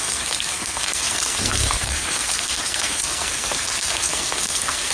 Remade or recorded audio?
remade